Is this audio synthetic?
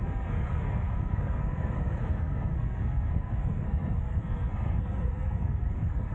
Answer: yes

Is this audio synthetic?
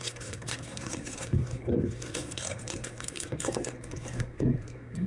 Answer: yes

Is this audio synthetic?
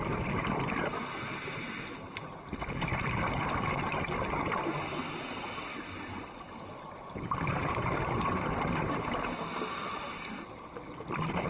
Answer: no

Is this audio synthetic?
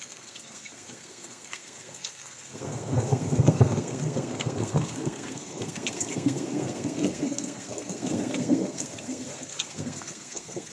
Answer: yes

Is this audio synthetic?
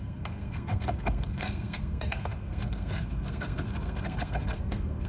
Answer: yes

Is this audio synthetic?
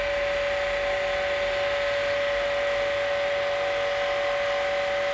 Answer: no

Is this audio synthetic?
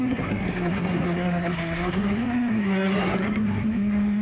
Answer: yes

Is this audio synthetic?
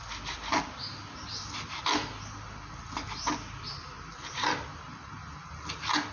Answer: no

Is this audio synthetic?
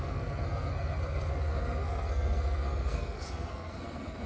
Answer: yes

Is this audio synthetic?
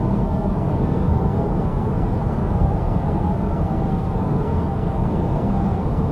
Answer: yes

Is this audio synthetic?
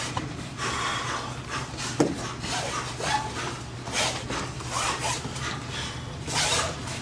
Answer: no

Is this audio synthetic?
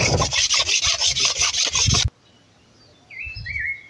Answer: no